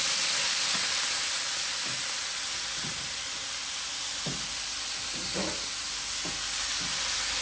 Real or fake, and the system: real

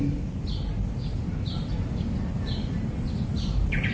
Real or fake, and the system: real